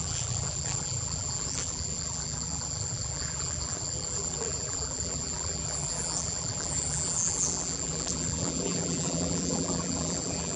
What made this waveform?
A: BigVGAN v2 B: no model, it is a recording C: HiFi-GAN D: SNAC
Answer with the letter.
A